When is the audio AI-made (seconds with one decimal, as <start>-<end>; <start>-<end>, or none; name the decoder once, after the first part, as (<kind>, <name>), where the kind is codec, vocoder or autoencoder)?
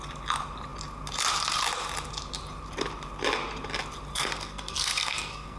4.1-5.6 (codec, SNAC)